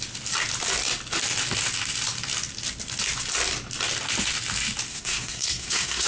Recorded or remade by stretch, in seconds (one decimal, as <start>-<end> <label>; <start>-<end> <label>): 0.0-4.9 recorded; 4.9-6.1 remade